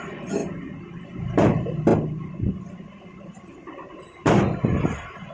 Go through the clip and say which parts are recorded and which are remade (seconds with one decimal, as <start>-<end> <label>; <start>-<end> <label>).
0.0-5.3 recorded